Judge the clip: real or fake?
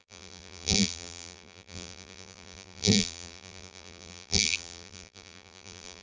fake